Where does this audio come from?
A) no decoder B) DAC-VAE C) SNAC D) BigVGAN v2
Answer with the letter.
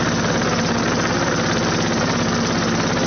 A